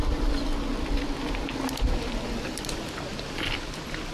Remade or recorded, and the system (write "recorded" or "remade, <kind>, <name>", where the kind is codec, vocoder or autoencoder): recorded